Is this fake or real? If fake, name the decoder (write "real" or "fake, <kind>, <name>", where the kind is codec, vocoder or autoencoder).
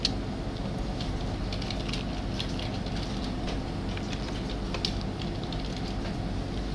real